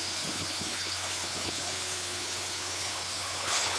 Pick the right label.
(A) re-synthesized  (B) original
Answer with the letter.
A